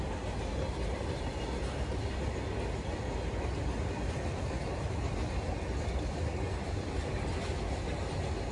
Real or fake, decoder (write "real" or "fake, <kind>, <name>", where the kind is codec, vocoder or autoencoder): real